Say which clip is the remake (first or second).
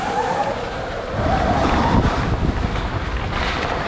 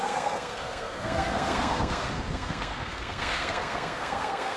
second